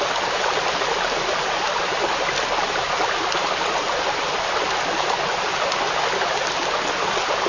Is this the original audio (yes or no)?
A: yes